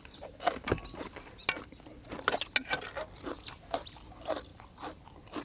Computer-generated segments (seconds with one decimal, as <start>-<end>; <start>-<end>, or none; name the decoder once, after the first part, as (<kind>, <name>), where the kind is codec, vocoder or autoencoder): none